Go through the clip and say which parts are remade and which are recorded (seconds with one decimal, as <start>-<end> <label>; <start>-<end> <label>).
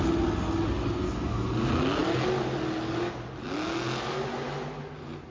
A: 0.0-5.3 recorded